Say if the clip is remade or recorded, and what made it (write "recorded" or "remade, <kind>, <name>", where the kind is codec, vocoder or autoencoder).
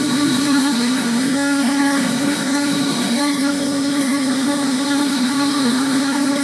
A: remade, codec, SNAC